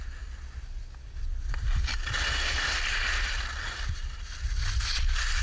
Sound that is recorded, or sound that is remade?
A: recorded